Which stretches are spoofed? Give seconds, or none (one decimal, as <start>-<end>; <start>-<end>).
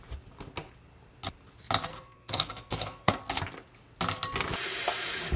1.9-3.2